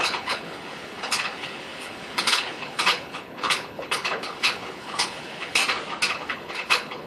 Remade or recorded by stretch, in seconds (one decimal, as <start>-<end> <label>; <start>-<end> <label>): 0.0-5.6 remade; 5.6-6.1 recorded; 6.1-7.1 remade